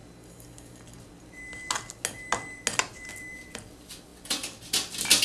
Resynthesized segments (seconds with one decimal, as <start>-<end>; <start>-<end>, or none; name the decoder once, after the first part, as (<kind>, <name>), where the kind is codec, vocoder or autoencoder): 3.1-4.1 (vocoder, BigVGAN v2); 4.7-5.2